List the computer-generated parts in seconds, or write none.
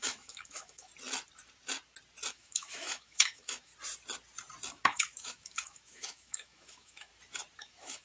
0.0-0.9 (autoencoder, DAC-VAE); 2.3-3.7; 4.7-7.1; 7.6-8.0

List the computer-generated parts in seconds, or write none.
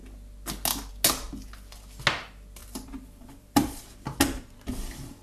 2.6-3.8 (vocoder, BigVGAN v2)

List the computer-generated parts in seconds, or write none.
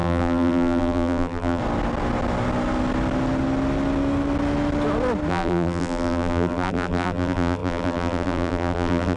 0.0-1.6 (vocoder, BigVGAN v2); 5.3-9.2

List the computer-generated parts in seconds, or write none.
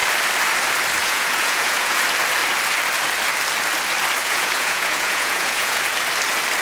1.0-2.0 (vocoder, Vocos); 4.2-5.8